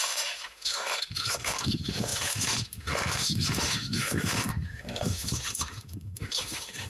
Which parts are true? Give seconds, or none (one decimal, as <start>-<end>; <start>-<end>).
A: none